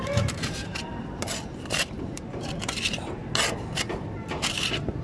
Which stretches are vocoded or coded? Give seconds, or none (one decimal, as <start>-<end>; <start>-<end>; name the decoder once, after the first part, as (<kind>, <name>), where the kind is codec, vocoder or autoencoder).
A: 0.0-0.7 (vocoder, BigVGAN v2); 2.0-3.2; 4.3-5.0